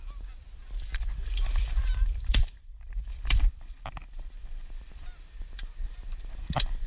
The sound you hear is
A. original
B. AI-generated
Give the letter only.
B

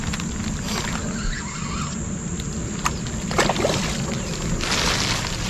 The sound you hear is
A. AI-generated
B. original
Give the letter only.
B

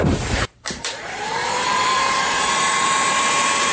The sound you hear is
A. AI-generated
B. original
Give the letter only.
A